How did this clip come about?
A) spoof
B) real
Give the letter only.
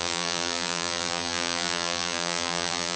A